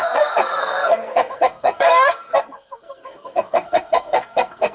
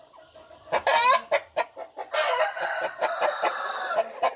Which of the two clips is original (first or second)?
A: second